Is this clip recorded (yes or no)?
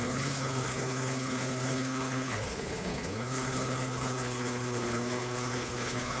no